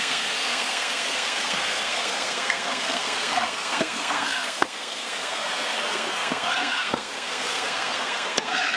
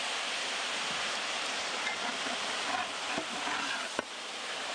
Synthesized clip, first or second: first